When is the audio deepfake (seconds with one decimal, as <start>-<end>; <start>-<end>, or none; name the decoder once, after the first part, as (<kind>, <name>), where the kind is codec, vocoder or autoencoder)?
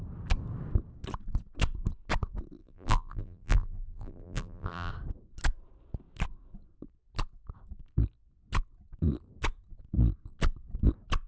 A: 2.6-4.9 (vocoder, BigVGAN v2)